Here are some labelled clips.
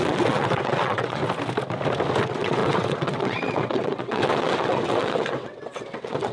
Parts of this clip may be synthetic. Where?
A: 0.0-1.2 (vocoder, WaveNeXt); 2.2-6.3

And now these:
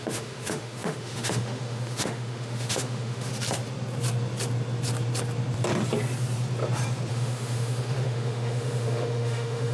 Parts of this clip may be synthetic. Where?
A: 0.0-3.3 (autoencoder, DAC-VAE); 7.1-9.7

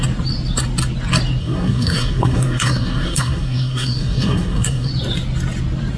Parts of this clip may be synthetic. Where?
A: 1.4-4.9 (codec, SNAC)

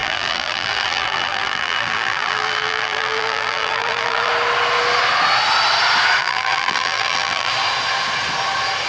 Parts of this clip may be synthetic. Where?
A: 0.0-4.3 (vocoder, BigVGAN v2); 6.2-7.5